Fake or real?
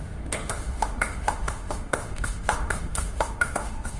fake